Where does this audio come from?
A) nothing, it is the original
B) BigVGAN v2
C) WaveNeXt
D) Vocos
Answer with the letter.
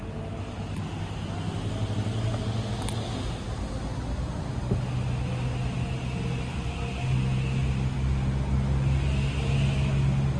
A